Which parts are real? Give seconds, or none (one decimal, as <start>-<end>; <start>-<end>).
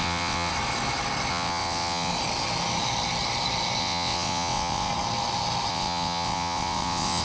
0.5-1.3; 2.1-3.8; 4.9-5.7